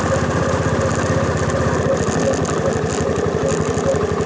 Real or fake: real